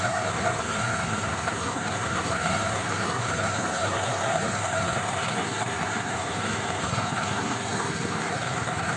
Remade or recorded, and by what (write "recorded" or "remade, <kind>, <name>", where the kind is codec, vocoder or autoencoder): remade, codec, SNAC